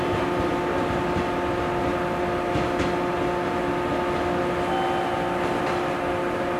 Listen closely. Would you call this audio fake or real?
real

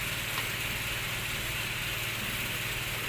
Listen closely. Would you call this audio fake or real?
real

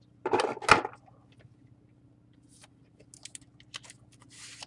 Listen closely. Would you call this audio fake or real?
real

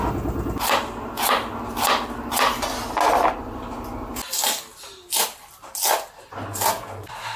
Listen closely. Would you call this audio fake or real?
real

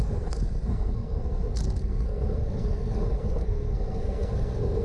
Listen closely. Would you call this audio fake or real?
fake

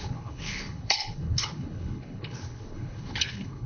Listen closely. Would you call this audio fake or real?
fake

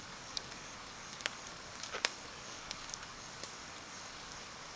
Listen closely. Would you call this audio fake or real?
fake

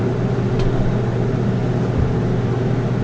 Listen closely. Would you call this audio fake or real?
real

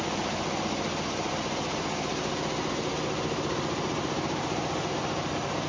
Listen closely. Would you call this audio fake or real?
real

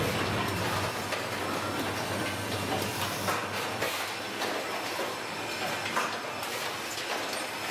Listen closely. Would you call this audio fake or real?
real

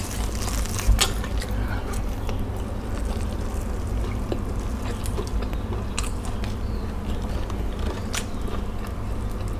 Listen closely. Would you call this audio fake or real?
real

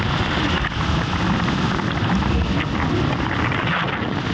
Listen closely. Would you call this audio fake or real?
real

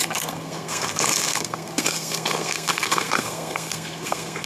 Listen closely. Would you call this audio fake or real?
fake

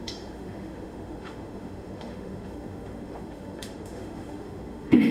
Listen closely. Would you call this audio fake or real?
fake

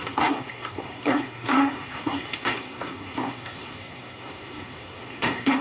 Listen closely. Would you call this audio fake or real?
fake